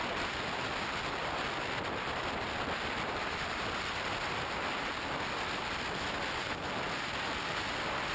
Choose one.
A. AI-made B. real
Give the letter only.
B